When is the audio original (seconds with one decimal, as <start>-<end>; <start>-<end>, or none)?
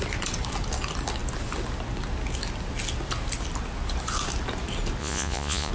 0.0-5.0